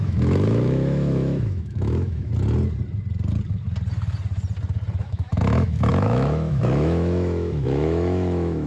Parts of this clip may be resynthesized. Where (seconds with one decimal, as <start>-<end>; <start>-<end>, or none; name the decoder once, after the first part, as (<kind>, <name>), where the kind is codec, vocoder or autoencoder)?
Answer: 0.0-2.3 (autoencoder, DAC-VAE); 5.0-8.7